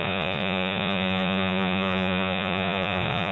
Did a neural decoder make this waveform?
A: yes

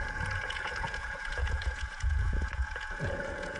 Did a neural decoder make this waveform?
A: yes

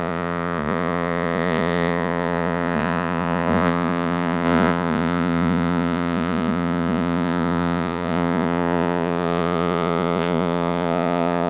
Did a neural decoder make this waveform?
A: yes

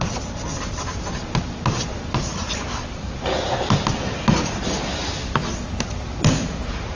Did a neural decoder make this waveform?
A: no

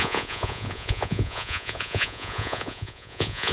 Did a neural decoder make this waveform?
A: yes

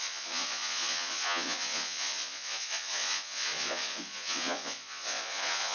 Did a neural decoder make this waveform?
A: yes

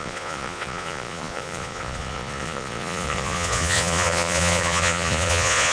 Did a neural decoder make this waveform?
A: yes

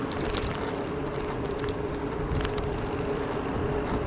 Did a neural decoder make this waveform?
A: no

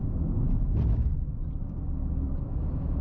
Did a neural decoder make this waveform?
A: no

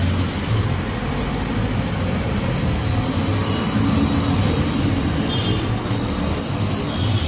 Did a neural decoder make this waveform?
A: no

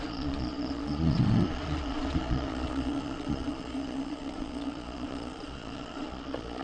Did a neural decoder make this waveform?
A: yes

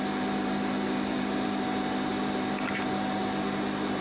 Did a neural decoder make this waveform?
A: no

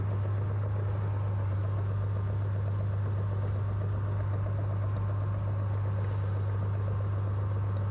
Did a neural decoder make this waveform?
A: no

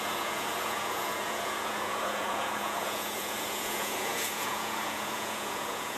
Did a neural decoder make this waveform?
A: yes